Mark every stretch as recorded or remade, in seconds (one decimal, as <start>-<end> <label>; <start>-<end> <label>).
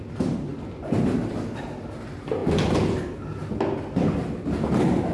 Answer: 0.0-5.1 recorded